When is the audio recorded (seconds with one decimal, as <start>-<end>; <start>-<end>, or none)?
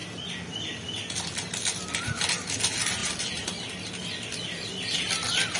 0.0-5.6